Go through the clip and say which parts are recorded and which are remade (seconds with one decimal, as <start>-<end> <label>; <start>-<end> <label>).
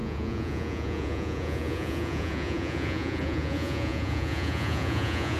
0.0-5.4 remade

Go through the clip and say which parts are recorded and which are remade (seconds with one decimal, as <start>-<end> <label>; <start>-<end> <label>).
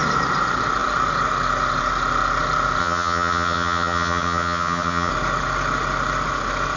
0.0-2.8 recorded; 2.8-5.1 remade; 5.1-6.8 recorded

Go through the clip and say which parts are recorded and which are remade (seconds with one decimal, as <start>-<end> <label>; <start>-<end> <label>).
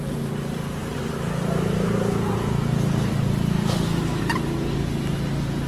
0.0-0.8 recorded; 0.8-4.2 remade; 4.2-5.7 recorded